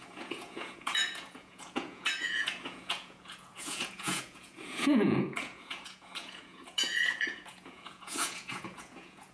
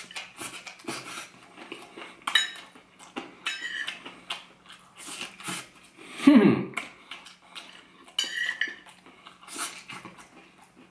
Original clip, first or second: second